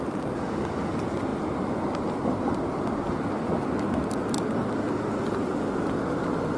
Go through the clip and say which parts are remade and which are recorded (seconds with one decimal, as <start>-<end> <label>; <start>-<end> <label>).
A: 0.0-6.6 recorded